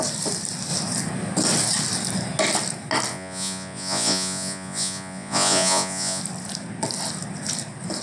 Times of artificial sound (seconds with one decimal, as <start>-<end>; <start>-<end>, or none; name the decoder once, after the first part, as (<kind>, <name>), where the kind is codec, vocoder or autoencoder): 3.1-6.2 (vocoder, Vocos)